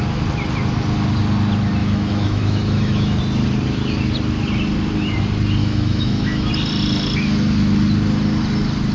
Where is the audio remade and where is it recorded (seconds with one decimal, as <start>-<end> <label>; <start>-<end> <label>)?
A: 0.0-1.8 recorded; 1.8-3.2 remade; 3.2-5.6 recorded; 5.6-6.5 remade; 6.5-8.9 recorded